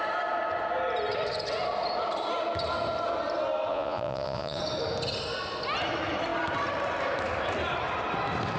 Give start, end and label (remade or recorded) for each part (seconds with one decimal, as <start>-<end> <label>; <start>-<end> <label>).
0.0-3.7 recorded; 3.7-4.6 remade; 4.6-8.6 recorded